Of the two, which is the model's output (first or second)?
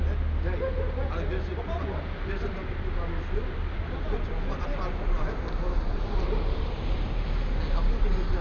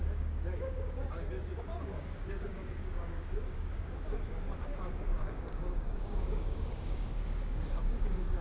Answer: second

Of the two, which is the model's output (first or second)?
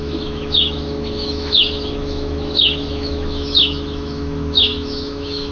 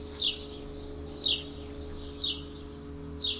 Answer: first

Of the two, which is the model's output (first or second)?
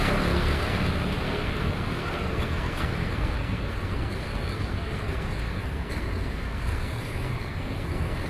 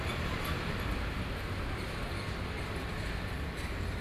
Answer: first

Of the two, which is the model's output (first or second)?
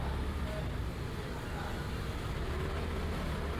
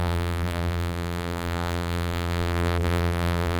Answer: second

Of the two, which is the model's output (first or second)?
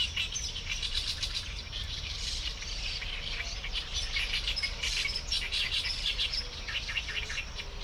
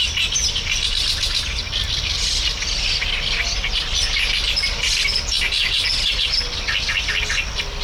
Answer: first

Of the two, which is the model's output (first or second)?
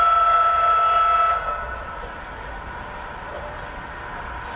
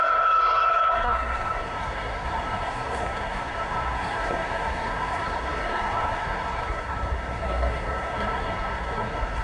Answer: second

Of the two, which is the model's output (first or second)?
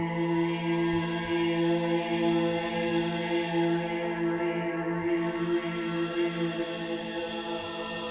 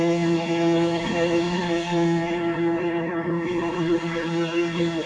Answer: second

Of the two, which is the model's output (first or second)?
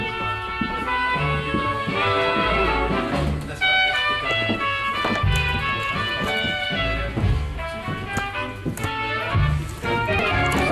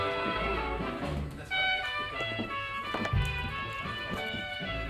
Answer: second